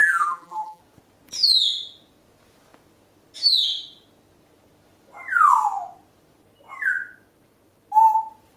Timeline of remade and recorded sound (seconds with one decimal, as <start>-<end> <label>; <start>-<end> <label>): 0.0-0.8 remade; 0.8-8.6 recorded